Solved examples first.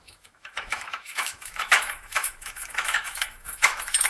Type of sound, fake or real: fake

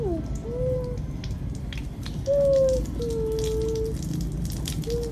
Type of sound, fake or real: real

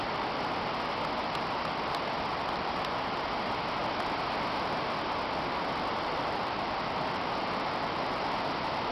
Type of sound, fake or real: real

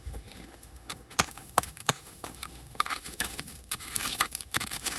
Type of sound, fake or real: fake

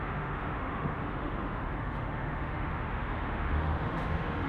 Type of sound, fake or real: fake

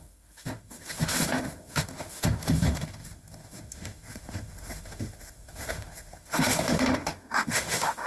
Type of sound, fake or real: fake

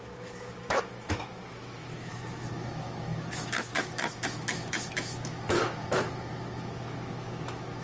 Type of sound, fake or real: fake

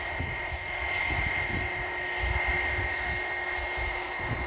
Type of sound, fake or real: real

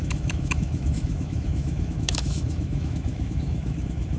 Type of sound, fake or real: fake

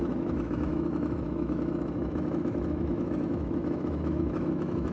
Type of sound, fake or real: fake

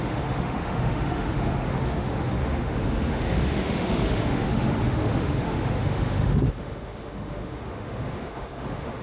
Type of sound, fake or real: fake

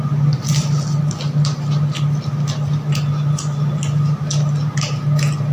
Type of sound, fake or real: real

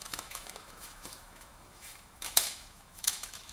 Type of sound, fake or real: fake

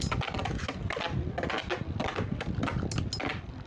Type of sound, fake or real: real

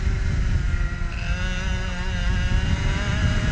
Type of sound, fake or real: real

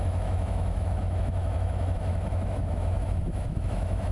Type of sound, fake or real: fake